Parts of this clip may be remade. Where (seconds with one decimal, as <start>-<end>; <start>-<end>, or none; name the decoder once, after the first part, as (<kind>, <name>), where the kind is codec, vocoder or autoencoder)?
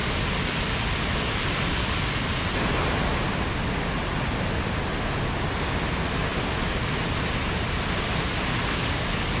none